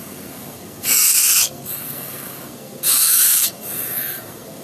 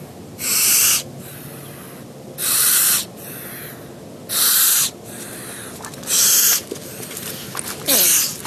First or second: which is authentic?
second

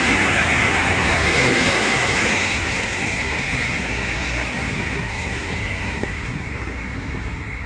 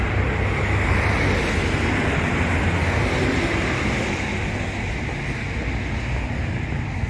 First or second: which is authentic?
second